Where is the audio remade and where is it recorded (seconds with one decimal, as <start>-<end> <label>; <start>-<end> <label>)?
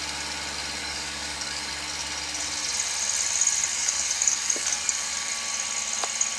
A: 0.0-0.8 recorded; 0.8-1.7 remade; 1.7-3.7 recorded; 3.7-5.3 remade; 5.3-6.4 recorded